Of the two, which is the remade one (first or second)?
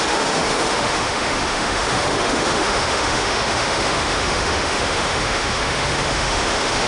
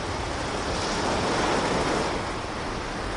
first